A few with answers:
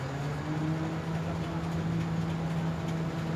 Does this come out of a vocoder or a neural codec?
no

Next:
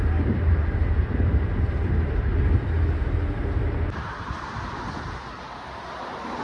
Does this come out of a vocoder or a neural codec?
no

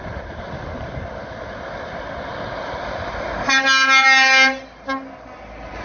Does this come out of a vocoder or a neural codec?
no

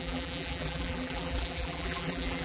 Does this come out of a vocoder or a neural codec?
yes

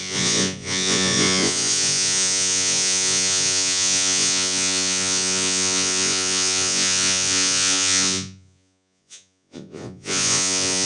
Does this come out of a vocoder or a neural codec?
yes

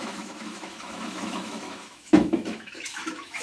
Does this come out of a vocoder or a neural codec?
yes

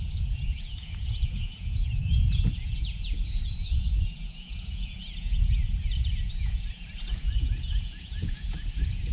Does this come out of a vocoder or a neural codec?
yes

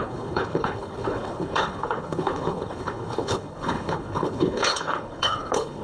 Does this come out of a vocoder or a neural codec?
yes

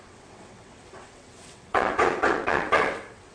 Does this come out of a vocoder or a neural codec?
yes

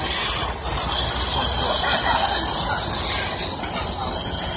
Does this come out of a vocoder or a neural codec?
no